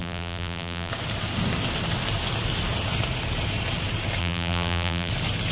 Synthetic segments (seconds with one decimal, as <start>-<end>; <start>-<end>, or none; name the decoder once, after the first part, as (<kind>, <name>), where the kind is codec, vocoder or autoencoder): 0.0-0.9 (vocoder, BigVGAN v2); 4.2-5.1